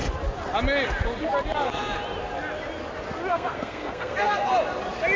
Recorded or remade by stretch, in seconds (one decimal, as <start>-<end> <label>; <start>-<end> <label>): 0.0-3.3 recorded; 3.3-4.5 remade; 4.5-5.2 recorded